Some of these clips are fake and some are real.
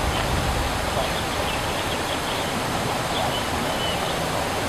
real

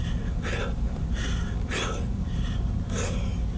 real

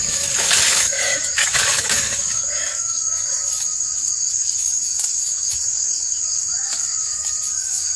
fake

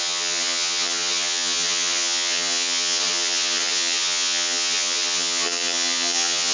fake